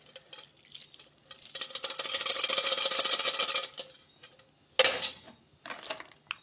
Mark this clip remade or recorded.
recorded